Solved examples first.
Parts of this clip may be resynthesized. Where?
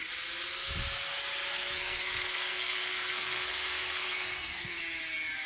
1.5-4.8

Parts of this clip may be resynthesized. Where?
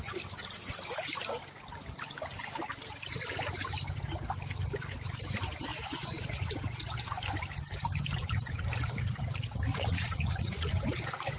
5.7-6.5; 9.7-10.7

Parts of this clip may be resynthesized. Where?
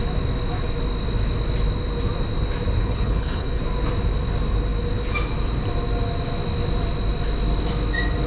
2.8-3.6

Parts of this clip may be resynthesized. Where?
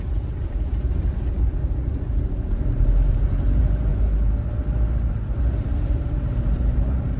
0.0-3.9; 5.1-7.2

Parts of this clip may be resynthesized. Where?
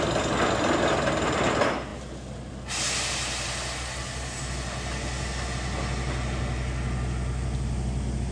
none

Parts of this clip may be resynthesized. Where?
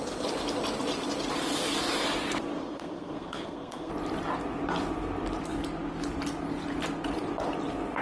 2.6-3.9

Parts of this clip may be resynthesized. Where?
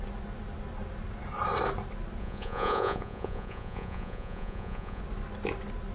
2.2-5.0